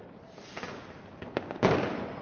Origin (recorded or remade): recorded